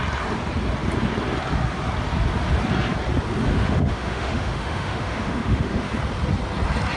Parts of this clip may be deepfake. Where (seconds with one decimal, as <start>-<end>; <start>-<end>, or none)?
3.5-5.9